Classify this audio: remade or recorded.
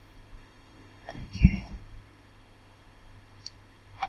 remade